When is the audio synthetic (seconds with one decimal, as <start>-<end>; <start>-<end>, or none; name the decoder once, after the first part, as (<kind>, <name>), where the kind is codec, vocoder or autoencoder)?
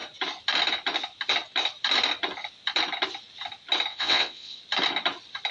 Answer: 3.9-4.6 (vocoder, WaveNeXt)